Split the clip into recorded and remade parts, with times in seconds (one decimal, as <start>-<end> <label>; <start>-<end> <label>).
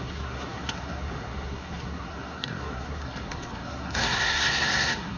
0.0-5.2 remade